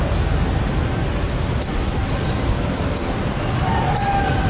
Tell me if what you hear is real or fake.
real